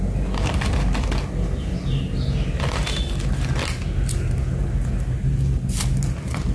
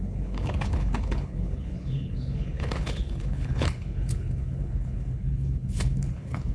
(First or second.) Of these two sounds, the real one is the first